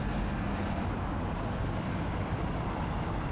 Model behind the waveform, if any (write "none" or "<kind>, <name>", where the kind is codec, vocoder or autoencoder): none